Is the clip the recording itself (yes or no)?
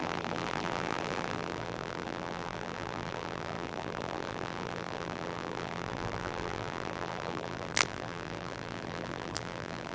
no